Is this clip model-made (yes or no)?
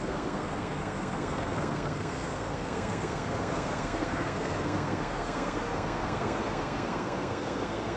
yes